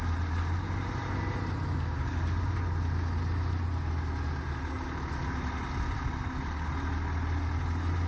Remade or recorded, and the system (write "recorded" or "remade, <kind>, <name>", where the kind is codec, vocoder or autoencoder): recorded